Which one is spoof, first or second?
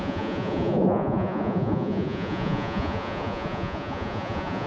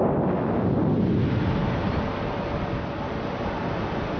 first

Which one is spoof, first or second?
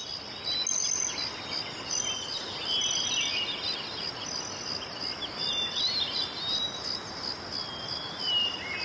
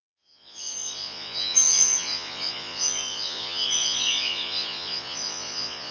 second